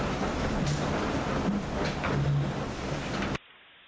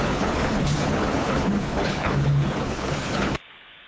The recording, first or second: first